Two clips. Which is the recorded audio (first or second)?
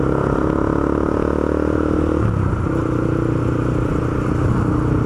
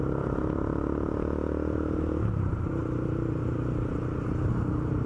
first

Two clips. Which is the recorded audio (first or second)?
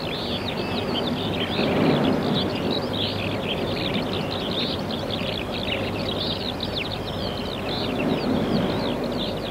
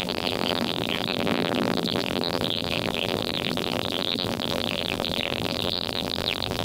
first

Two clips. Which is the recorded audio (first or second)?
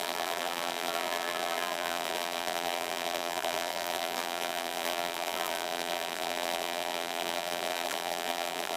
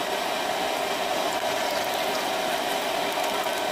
second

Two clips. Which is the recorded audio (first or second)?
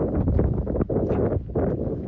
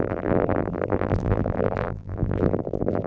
first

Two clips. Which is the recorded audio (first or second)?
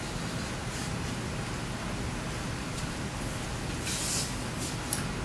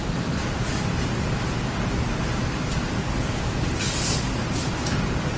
first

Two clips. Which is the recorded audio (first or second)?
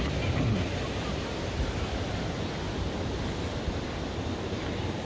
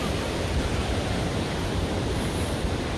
first